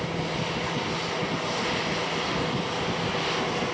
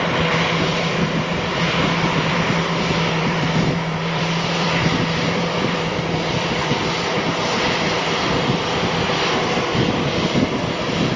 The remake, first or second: second